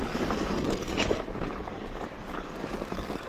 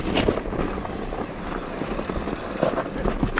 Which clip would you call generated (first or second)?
first